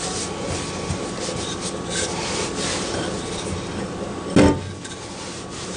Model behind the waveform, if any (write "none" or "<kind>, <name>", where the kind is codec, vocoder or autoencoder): none